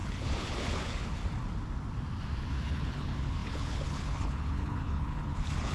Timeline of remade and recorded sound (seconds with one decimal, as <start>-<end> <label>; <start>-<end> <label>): 0.0-1.2 remade; 1.2-2.5 recorded; 2.5-5.7 remade